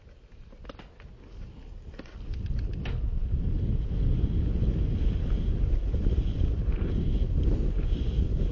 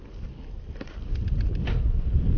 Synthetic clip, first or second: second